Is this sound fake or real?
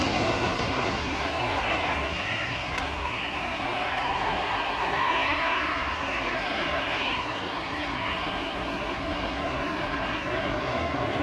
fake